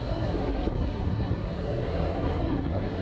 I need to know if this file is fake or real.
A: fake